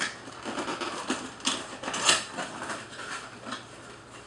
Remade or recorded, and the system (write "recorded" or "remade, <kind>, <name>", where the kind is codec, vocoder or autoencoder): recorded